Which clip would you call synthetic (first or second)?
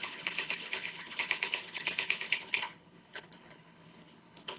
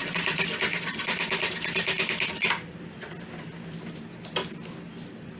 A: first